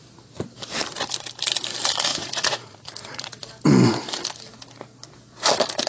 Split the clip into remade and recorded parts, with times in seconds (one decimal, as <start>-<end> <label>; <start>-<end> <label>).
0.0-2.1 recorded; 2.1-3.4 remade; 3.4-5.9 recorded